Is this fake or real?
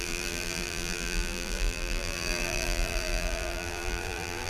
fake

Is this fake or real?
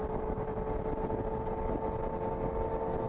real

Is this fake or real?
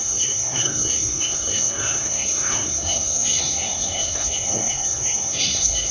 fake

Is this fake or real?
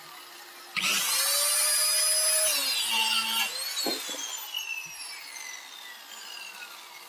real